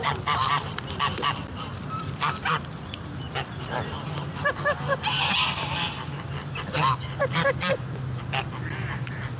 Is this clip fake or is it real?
fake